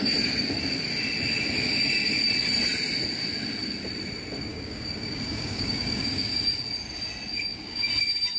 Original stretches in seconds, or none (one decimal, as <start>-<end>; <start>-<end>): 0.0-4.5; 6.5-7.5; 8.0-8.4